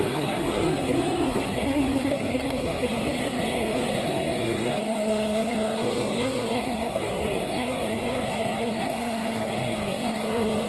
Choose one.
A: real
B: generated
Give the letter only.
B